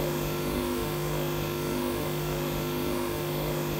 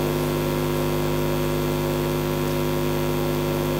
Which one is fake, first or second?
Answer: first